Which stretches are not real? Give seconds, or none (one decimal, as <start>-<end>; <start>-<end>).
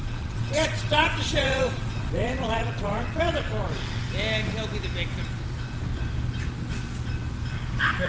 0.0-4.0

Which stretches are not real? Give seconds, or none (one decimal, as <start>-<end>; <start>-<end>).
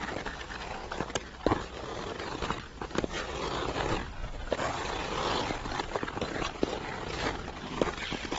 1.9-2.9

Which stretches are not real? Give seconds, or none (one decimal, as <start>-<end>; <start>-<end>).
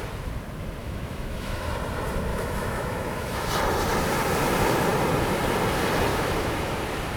0.8-1.7; 2.3-3.5; 6.1-6.7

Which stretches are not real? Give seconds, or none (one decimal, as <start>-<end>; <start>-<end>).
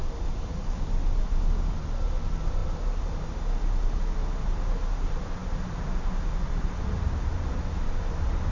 none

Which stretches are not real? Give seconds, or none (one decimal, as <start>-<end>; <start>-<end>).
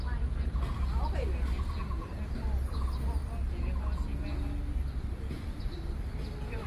none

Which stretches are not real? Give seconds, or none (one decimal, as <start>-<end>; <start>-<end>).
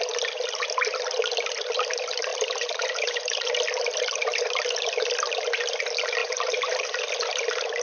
2.3-3.5; 6.2-7.1